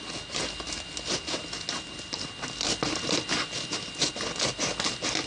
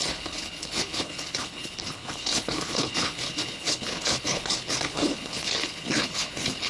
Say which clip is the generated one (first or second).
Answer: second